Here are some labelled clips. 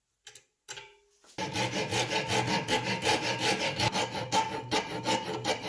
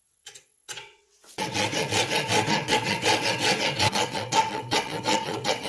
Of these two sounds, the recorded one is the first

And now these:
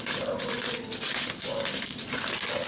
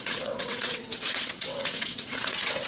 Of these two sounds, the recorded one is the first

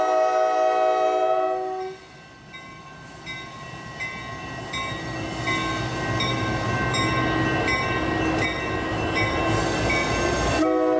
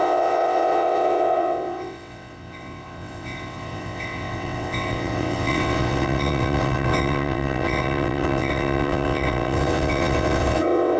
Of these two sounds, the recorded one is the first